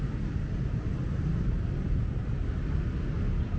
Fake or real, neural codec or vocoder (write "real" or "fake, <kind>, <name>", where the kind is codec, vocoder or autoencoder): real